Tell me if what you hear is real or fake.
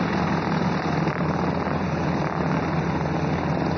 real